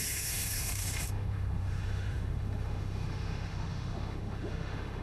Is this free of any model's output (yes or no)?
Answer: no